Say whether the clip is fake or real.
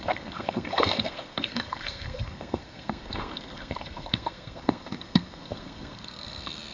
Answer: fake